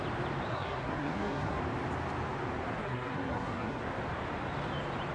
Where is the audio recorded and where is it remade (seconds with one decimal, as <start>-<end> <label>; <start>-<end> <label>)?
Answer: 0.0-0.5 recorded; 0.5-1.6 remade; 1.6-2.8 recorded; 2.8-3.8 remade; 3.8-5.1 recorded